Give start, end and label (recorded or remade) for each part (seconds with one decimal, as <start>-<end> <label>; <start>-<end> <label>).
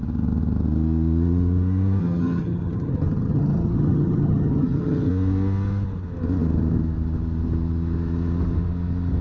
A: 0.0-2.0 recorded; 2.0-5.1 remade; 5.1-9.2 recorded